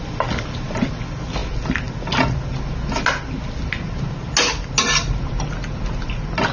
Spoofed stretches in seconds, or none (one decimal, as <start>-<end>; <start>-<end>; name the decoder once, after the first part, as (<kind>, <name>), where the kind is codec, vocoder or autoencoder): none